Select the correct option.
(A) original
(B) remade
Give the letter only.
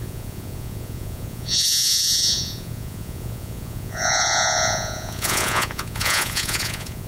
B